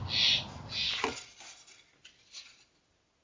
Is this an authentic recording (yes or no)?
yes